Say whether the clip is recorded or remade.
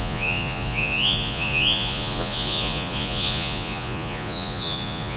remade